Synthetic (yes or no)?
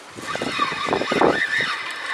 no